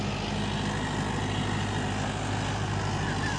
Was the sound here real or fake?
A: real